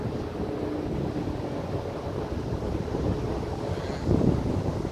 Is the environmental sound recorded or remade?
recorded